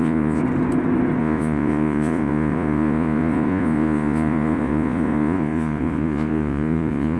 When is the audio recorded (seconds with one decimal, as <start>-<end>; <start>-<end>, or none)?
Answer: 0.4-1.2